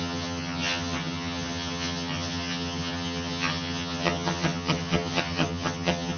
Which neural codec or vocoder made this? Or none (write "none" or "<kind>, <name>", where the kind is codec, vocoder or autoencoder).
vocoder, HiFi-GAN